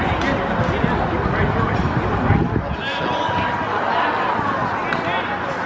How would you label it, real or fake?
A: real